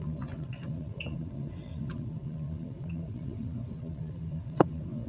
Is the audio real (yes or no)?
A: no